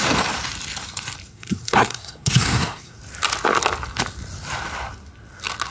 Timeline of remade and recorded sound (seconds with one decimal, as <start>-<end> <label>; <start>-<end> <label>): 0.0-1.3 recorded; 1.3-3.0 remade; 3.0-5.7 recorded